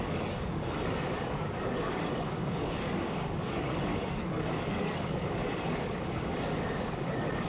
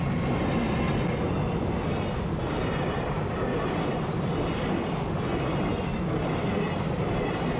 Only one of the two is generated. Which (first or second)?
first